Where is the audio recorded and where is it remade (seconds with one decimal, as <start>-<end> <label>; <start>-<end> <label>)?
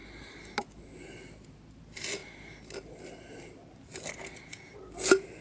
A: 0.0-5.4 recorded